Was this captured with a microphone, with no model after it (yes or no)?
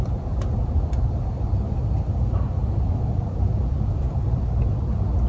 yes